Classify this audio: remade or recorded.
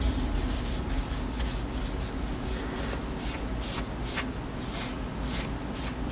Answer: recorded